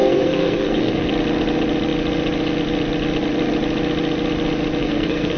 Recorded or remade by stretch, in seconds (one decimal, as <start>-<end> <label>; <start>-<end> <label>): 0.0-1.1 remade; 1.1-4.8 recorded; 4.8-5.4 remade